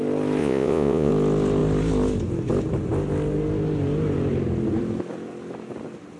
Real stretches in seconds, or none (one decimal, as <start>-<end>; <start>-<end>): 0.0-0.4; 1.1-6.2